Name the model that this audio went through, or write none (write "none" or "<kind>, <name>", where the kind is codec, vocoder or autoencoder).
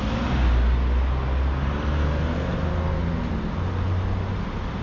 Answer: none